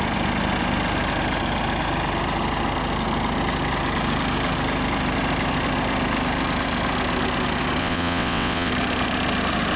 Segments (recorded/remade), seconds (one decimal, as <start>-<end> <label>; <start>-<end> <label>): 0.0-7.8 recorded; 7.8-8.7 remade; 8.7-9.8 recorded